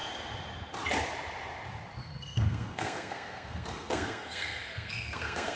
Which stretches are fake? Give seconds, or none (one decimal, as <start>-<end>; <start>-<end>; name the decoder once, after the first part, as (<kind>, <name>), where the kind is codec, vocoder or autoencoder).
2.0-5.6 (codec, SNAC)